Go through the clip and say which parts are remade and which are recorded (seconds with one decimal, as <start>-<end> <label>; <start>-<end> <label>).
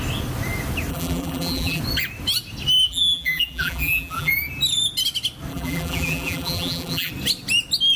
0.0-0.9 recorded; 0.9-1.8 remade; 1.8-2.8 recorded; 2.8-4.3 remade; 4.3-5.5 recorded; 5.5-7.1 remade; 7.1-8.0 recorded